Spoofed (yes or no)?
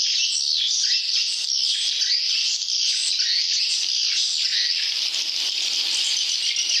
no